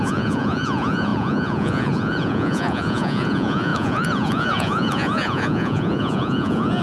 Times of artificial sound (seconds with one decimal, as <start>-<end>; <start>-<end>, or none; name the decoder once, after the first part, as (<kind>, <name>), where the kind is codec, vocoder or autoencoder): 0.0-6.8 (vocoder, Vocos)